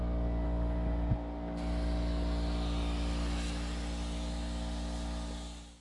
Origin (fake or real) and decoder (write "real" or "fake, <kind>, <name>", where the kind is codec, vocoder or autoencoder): real